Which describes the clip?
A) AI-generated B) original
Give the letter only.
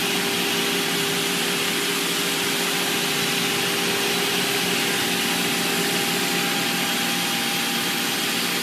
B